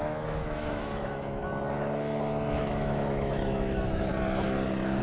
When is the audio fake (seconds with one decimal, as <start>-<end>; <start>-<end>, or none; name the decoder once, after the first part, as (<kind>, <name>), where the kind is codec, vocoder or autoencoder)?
0.0-1.4 (autoencoder, DAC-VAE); 2.6-4.1